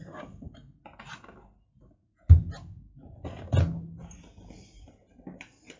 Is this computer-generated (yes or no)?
no